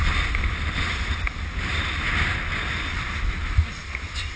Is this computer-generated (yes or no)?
no